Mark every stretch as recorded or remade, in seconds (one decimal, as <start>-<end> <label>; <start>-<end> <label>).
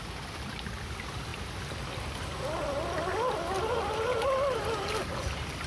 0.0-5.7 recorded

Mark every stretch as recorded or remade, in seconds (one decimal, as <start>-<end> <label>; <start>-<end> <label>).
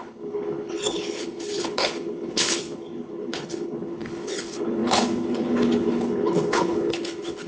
0.0-7.5 remade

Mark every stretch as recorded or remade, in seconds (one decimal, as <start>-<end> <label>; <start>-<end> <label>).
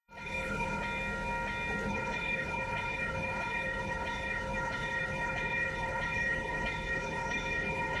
0.0-0.8 remade; 0.8-1.9 recorded; 1.9-8.0 remade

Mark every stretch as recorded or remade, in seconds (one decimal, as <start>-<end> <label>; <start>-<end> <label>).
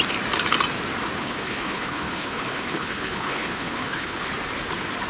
0.0-1.2 recorded; 1.2-4.3 remade; 4.3-5.1 recorded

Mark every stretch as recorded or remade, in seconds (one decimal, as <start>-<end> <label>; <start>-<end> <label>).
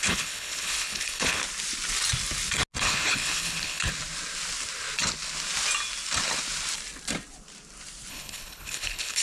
0.0-1.4 remade; 1.4-2.8 recorded; 2.8-3.9 remade; 3.9-8.1 recorded; 8.1-9.2 remade